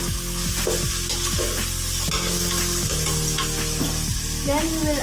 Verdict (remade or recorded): recorded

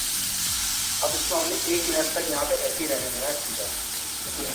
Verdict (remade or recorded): remade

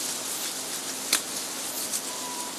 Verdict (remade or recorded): recorded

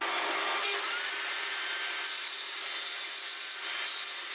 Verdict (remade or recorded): recorded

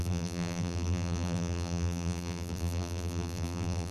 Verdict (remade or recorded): remade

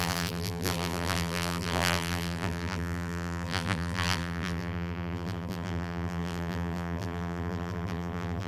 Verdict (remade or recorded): remade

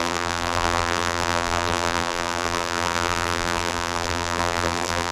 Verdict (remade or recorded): remade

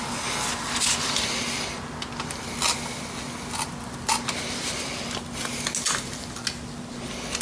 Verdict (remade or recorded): recorded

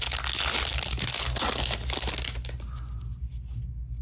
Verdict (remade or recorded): recorded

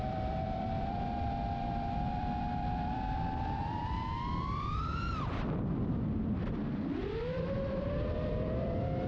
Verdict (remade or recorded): remade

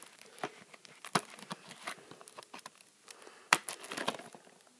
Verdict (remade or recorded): recorded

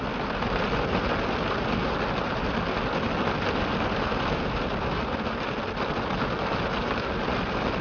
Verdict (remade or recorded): recorded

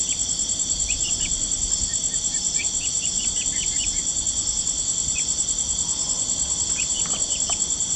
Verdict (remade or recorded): recorded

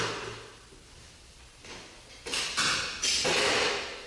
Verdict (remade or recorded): recorded